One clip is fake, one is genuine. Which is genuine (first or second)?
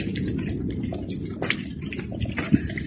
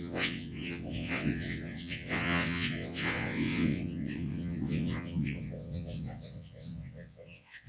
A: first